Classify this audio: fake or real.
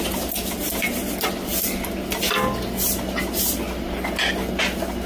real